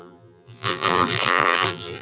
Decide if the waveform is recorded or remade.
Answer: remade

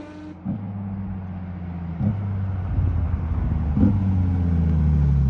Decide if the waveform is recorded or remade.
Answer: recorded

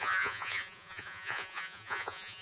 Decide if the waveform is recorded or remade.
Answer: remade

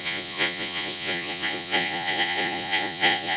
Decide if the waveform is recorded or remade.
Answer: remade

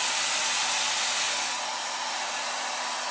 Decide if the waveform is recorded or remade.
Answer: recorded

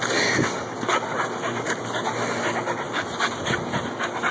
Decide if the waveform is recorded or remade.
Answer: recorded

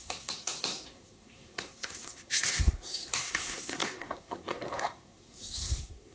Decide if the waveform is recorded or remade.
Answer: remade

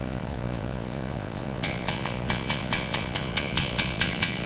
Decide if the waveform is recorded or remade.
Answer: remade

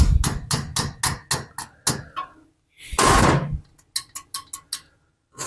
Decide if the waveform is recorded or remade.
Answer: recorded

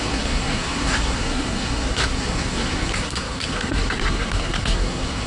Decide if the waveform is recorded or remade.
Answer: remade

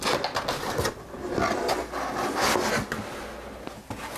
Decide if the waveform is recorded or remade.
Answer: recorded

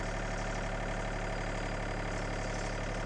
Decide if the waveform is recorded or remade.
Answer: recorded